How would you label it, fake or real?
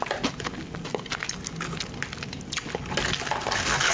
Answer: real